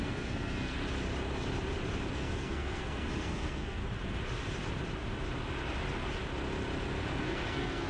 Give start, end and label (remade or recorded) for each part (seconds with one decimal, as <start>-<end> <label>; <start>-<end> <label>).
0.0-0.8 remade; 0.8-2.1 recorded; 2.1-3.8 remade; 3.8-7.2 recorded; 7.2-7.9 remade